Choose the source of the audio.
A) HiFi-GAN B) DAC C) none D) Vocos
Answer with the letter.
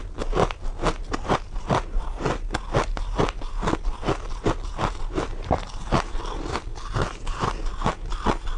C